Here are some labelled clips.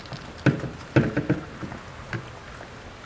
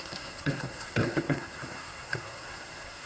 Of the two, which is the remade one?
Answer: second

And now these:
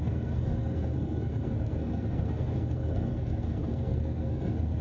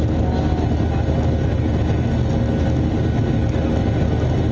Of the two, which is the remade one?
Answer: first